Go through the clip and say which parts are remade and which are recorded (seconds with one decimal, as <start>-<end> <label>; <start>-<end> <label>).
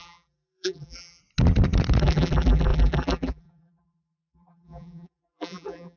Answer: 0.0-1.2 remade; 1.2-2.0 recorded; 2.0-6.0 remade